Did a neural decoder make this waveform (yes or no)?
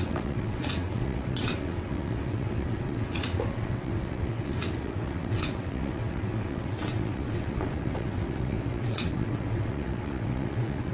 yes